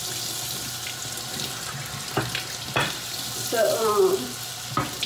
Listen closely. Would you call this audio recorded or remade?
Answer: recorded